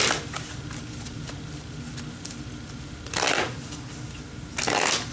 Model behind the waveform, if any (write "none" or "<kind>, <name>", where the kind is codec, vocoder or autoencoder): none